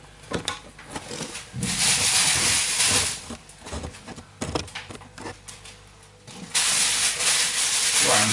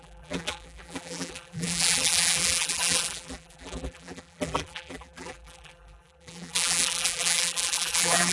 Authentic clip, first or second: first